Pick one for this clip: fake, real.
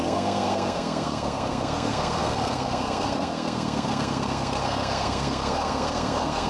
fake